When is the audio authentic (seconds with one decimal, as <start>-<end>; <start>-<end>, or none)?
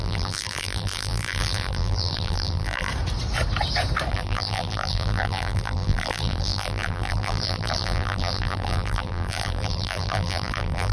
2.9-4.1